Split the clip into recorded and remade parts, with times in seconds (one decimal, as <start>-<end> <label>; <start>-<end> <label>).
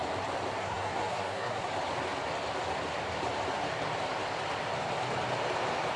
0.0-0.6 recorded; 0.6-1.7 remade; 1.7-6.0 recorded